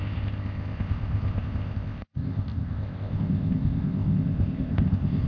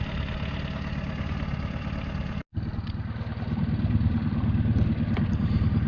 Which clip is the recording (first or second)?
second